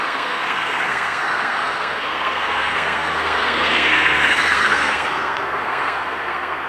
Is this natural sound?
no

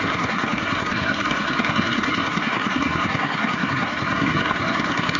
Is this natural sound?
no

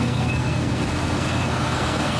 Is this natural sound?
no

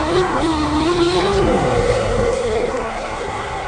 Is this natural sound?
no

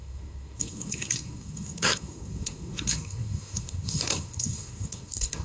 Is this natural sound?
no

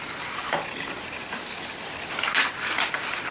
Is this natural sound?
yes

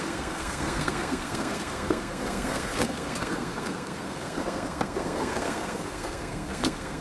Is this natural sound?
no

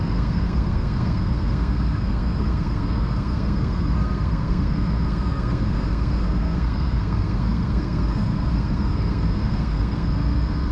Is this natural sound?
no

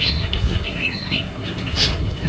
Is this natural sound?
no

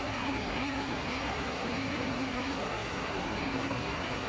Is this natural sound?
no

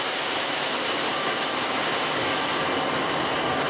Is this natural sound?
yes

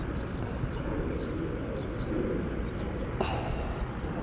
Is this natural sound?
yes